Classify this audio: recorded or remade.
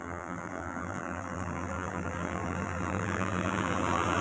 remade